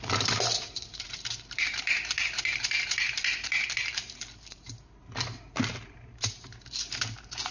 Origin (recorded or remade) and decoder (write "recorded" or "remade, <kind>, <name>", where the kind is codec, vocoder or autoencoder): remade, vocoder, BigVGAN v2